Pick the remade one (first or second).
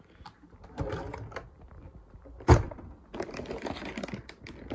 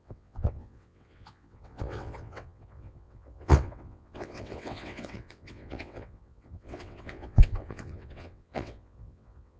second